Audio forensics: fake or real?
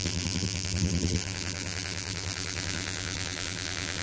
fake